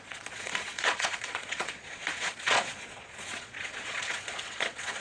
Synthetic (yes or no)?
yes